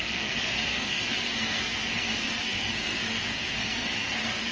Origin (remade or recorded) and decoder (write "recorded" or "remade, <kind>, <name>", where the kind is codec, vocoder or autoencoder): remade, codec, SNAC